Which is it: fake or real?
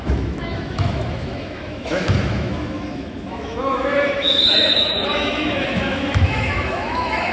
fake